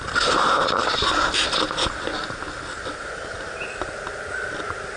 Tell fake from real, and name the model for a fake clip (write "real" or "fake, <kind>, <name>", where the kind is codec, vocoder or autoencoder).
real